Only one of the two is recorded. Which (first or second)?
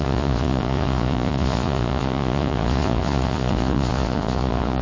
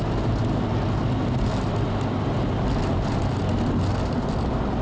second